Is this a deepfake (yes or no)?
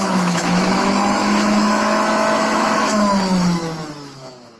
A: yes